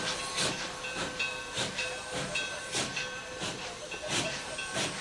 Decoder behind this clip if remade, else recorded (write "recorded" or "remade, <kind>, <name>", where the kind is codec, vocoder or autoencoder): recorded